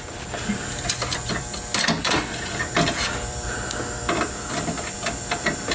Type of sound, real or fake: fake